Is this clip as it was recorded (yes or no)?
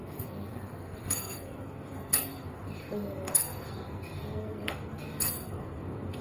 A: no